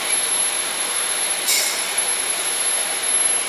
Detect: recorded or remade remade